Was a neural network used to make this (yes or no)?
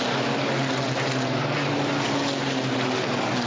no